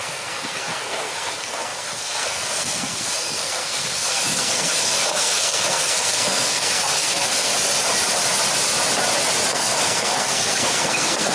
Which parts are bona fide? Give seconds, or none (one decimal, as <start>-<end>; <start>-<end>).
7.5-9.5